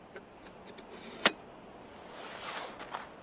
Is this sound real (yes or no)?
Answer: yes